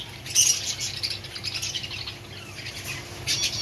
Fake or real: real